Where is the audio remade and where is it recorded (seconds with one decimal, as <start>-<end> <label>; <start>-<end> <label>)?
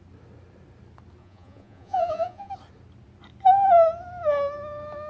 0.0-1.2 recorded; 1.2-2.5 remade; 2.5-5.1 recorded